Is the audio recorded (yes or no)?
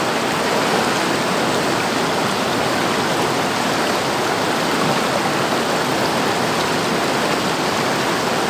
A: yes